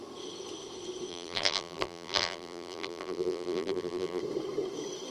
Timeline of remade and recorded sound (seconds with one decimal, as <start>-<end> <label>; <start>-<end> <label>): 0.0-1.1 recorded; 1.1-4.2 remade; 4.2-5.1 recorded